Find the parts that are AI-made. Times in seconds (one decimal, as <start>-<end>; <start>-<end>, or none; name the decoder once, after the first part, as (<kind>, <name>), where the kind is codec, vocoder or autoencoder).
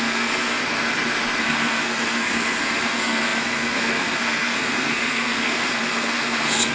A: 0.0-0.6 (codec, SNAC); 1.4-6.7